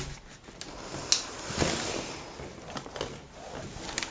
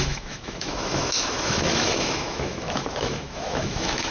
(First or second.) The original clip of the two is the first